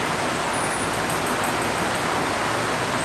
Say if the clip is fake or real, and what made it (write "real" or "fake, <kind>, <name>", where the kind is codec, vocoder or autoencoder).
real